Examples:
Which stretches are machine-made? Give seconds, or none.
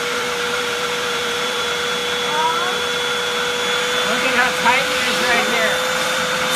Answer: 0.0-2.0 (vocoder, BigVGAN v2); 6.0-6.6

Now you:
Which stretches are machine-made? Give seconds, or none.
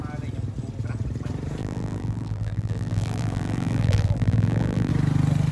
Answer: 1.6-4.9 (vocoder, BigVGAN v2)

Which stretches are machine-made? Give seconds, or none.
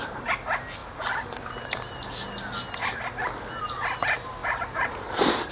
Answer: 4.4-5.5 (vocoder, BigVGAN v2)